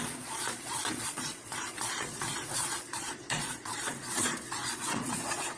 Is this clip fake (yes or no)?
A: yes